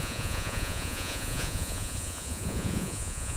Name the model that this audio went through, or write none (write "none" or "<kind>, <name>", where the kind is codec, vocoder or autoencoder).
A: vocoder, Vocos